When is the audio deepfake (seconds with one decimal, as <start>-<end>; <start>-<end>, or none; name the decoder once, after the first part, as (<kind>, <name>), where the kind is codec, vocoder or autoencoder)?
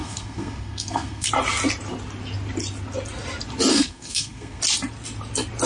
0.0-1.3 (codec, SNAC); 3.7-4.6